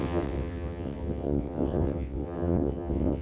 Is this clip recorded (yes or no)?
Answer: no